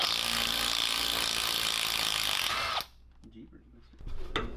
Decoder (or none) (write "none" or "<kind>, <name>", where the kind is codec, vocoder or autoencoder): none